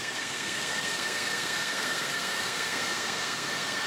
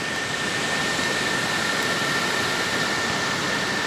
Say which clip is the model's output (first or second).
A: first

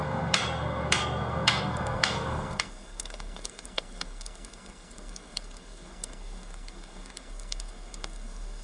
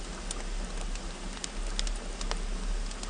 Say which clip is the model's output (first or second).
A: first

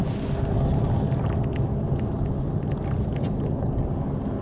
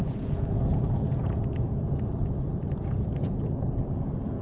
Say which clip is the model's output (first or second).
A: second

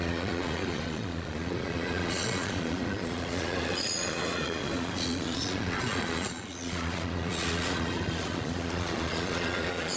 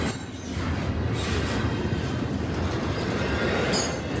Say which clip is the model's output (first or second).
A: first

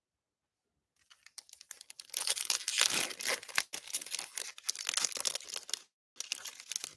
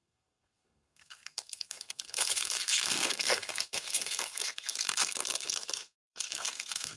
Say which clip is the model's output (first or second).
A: second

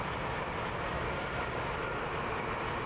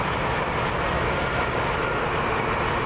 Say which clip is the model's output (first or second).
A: first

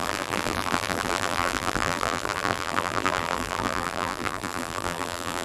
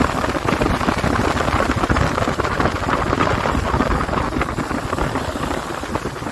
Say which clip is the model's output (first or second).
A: first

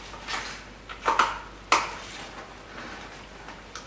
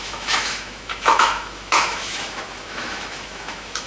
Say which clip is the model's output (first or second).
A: second